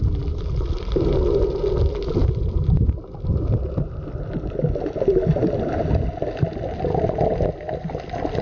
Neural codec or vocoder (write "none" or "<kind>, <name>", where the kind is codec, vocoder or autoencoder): none